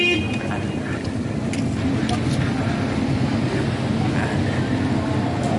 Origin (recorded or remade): recorded